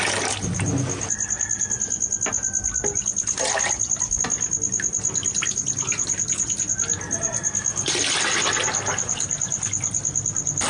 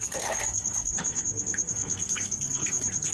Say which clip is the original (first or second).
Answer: first